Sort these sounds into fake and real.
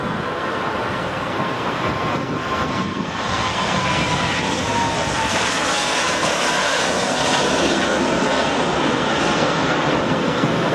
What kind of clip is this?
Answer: fake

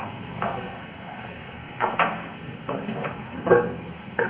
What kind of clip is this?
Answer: fake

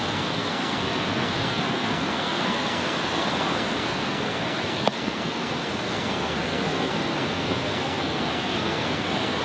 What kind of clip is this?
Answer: fake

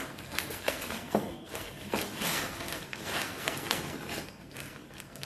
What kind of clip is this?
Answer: fake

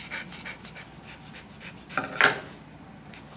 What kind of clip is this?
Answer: real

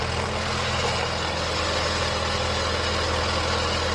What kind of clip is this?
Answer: real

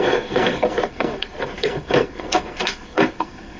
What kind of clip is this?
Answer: fake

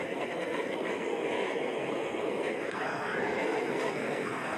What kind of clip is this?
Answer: fake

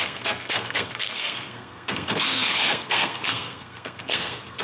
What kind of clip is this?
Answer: fake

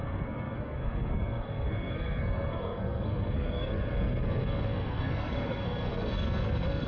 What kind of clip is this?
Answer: fake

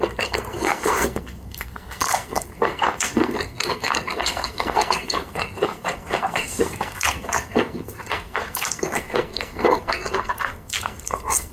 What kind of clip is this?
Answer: fake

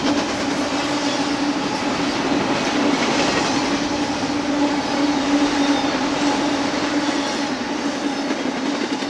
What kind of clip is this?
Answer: real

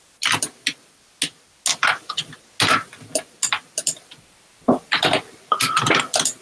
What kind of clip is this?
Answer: real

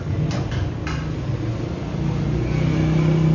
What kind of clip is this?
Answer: real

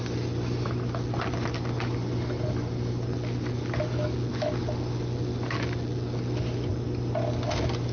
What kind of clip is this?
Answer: real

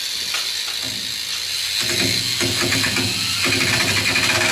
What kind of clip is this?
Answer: real